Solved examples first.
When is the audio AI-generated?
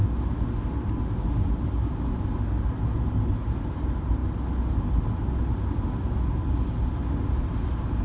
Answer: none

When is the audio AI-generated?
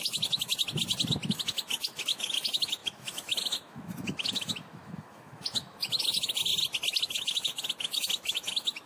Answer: 0.0-0.5; 1.3-6.5; 7.0-8.9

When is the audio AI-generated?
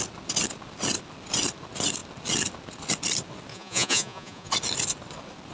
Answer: 3.5-4.5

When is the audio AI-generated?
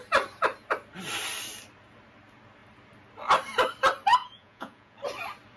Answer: 4.2-5.0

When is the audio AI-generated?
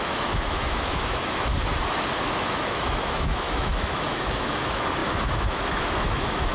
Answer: 0.0-1.5; 2.2-6.5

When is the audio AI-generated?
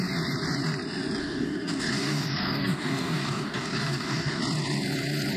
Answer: 1.2-4.4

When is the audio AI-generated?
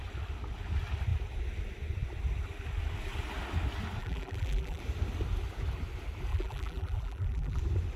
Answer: 4.0-4.8; 6.3-7.6